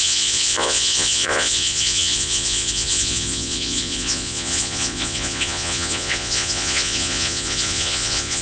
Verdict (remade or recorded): remade